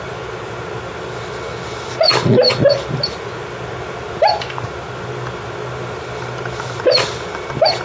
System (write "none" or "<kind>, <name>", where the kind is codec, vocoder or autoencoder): none